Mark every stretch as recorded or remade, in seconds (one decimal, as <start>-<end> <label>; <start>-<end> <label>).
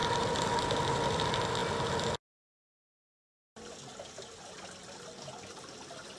0.0-6.2 recorded